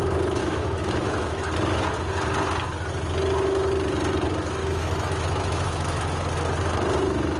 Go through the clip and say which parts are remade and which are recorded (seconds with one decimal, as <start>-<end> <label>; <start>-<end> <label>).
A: 0.0-0.4 recorded; 0.4-1.5 remade; 1.5-4.6 recorded; 4.6-6.0 remade; 6.0-7.4 recorded